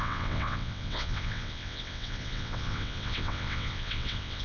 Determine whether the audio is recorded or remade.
remade